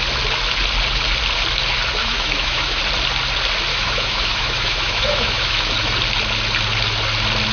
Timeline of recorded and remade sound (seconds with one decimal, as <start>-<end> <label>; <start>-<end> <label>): 0.0-2.0 recorded; 2.0-2.8 remade; 2.8-3.7 recorded; 3.7-5.7 remade; 5.7-7.5 recorded

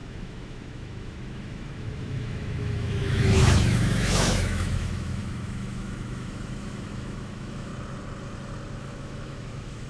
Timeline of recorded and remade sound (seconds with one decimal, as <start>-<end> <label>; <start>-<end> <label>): 0.0-7.7 remade; 7.7-8.8 recorded; 8.8-9.9 remade